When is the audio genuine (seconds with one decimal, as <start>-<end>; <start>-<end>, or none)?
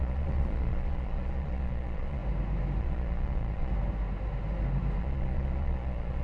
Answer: 2.2-2.8; 3.7-5.0